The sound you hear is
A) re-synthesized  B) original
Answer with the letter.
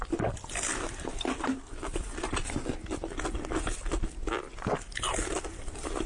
B